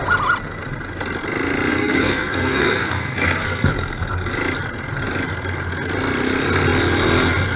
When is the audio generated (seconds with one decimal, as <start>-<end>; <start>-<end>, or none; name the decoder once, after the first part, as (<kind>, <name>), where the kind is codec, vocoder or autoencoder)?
1.7-4.3 (codec, SNAC)